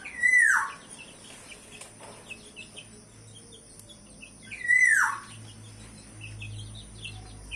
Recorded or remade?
recorded